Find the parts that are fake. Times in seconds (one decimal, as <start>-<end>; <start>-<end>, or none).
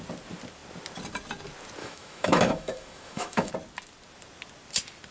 1.8-3.5